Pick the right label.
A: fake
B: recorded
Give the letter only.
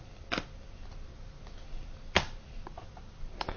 B